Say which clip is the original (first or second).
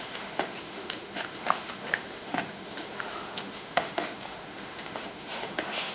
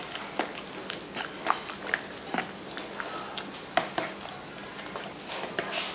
second